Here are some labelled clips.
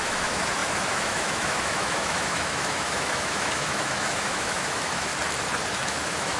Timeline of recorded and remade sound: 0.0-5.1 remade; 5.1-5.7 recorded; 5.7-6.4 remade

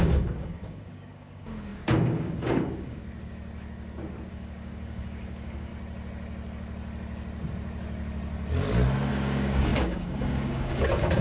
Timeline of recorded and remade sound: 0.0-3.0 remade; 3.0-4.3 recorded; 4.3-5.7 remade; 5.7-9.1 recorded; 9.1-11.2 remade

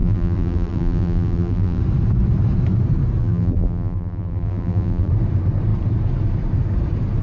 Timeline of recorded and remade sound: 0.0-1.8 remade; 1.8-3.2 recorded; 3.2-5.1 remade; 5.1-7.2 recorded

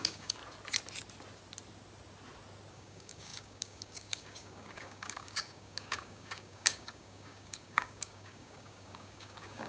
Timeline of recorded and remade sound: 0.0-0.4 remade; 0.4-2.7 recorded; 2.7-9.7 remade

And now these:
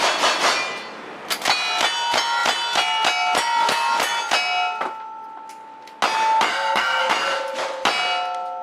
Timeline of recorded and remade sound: 0.0-6.5 recorded; 6.5-7.1 remade; 7.1-8.6 recorded

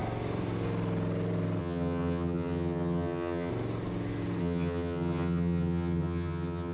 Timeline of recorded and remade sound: 0.0-1.6 recorded; 1.6-3.5 remade; 3.5-4.4 recorded; 4.4-6.7 remade

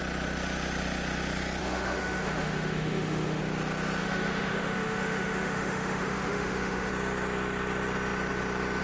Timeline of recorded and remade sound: 0.0-1.6 recorded; 1.6-3.4 remade; 3.4-4.0 recorded; 4.0-6.9 remade; 6.9-8.8 recorded

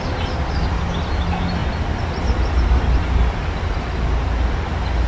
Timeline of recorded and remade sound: 0.0-5.1 recorded